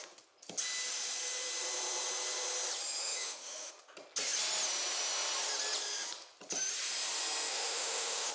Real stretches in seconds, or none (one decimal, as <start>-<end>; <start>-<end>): 0.0-3.0; 3.7-7.5